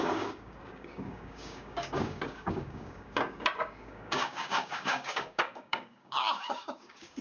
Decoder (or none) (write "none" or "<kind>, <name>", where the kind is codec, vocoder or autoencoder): codec, DAC